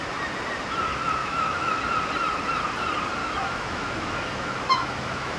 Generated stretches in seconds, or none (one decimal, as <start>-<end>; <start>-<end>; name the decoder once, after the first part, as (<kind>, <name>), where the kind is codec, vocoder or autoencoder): 1.2-1.8 (autoencoder, DAC-VAE); 3.2-5.4